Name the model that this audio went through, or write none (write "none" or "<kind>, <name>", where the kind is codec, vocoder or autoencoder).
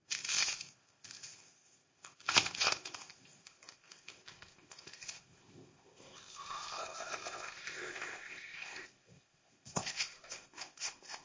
codec, ZipCodec